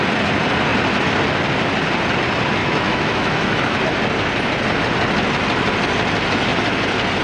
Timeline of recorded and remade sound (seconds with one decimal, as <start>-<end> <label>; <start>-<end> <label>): 0.0-2.6 recorded; 2.6-3.8 remade; 3.8-7.2 recorded